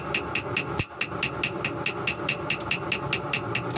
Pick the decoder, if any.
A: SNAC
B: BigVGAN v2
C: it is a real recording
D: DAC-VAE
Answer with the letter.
C